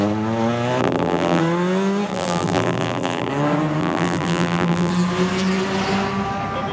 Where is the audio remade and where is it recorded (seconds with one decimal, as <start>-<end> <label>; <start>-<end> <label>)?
0.0-0.8 recorded; 0.8-1.4 remade; 1.4-2.1 recorded; 2.1-3.3 remade; 3.3-3.8 recorded; 3.8-4.9 remade; 4.9-6.7 recorded